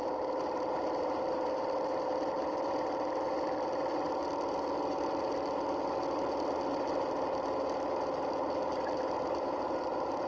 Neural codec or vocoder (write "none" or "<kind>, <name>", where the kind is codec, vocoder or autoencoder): none